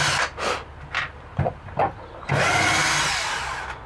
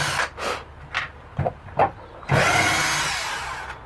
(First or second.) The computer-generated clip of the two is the first